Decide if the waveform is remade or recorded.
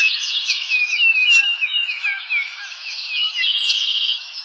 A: remade